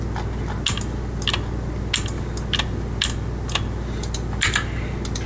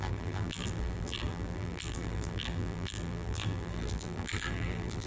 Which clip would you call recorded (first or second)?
first